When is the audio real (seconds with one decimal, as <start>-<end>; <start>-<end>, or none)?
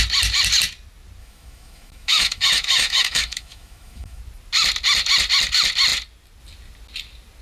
0.0-1.2; 4.2-7.4